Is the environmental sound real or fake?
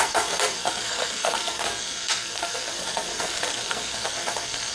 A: fake